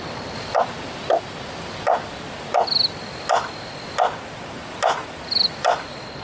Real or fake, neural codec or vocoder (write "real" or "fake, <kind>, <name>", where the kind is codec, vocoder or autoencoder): real